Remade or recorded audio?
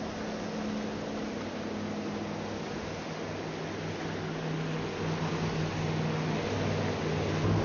recorded